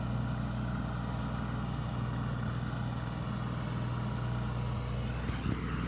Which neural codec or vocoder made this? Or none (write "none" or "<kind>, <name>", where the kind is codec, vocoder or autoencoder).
none